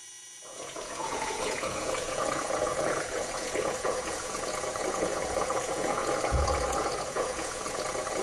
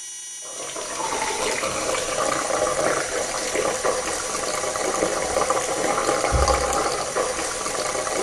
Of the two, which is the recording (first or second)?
second